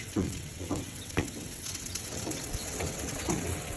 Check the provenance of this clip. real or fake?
fake